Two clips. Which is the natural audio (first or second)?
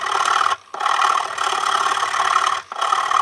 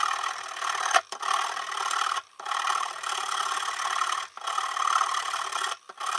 first